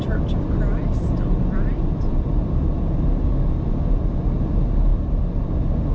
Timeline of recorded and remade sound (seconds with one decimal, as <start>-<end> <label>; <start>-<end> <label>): 0.0-0.8 recorded; 0.8-3.7 remade; 3.7-4.9 recorded; 4.9-5.5 remade; 5.5-5.9 recorded